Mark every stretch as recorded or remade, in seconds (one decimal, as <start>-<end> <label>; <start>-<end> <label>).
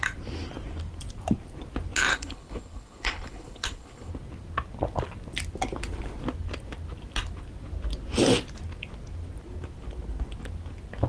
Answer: 0.0-2.1 recorded; 2.1-4.1 remade; 4.1-11.1 recorded